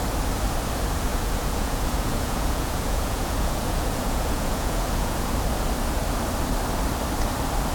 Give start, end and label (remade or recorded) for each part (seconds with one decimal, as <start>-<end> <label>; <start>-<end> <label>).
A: 0.0-1.1 recorded; 1.1-5.3 remade; 5.3-7.7 recorded